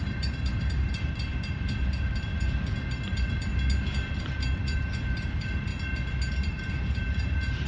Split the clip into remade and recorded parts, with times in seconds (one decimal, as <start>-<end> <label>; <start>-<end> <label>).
0.0-3.5 remade; 3.5-4.2 recorded; 4.2-5.7 remade; 5.7-6.3 recorded; 6.3-7.7 remade